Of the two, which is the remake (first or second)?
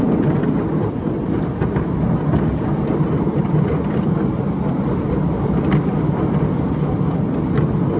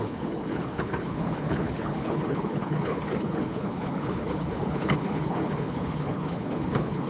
second